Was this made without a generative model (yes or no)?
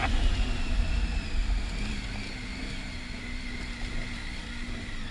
yes